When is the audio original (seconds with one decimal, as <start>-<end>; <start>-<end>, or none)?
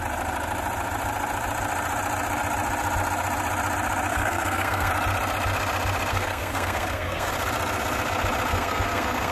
0.0-4.1; 4.9-6.1; 7.3-8.5